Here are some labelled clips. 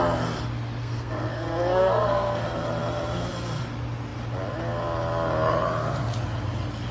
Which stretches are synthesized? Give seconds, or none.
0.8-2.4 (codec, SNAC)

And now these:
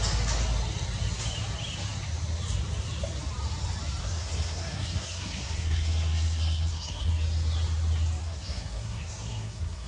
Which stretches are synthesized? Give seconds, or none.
4.0-7.1 (codec, SNAC); 8.2-9.9

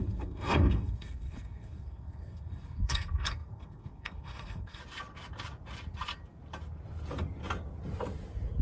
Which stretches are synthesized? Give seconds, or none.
0.0-4.8 (codec, SNAC)

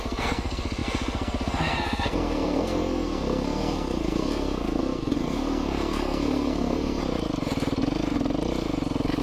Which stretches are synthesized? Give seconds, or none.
0.0-7.0 (codec, SNAC)

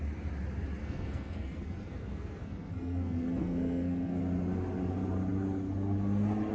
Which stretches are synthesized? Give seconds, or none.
0.8-4.2 (codec, SNAC)

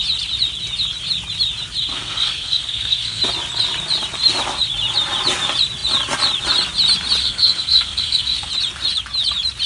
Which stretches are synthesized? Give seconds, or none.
1.9-3.2 (codec, SNAC); 7.2-8.5

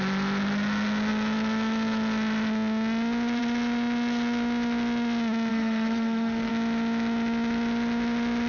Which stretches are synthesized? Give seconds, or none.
5.5-6.5 (codec, SNAC)

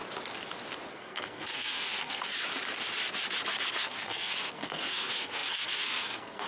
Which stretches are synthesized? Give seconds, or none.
0.9-2.3 (codec, SNAC); 3.7-6.5